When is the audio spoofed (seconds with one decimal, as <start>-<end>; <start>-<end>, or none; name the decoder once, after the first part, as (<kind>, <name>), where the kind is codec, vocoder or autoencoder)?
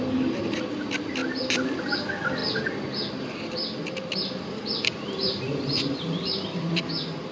1.2-1.8 (vocoder, BigVGAN v2); 2.4-6.8